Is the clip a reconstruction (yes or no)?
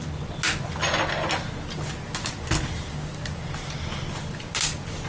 no